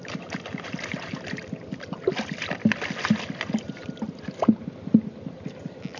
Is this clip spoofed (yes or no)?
no